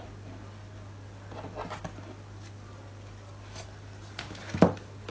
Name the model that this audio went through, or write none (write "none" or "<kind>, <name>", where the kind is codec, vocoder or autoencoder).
none